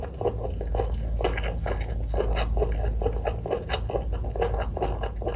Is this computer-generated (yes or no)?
no